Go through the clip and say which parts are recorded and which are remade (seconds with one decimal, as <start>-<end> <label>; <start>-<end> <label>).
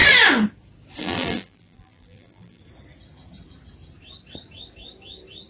0.0-1.0 recorded; 1.0-2.6 remade; 2.6-5.5 recorded